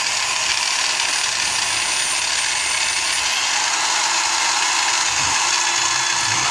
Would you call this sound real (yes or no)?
yes